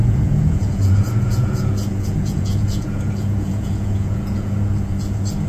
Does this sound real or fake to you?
fake